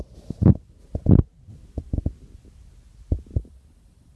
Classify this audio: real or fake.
real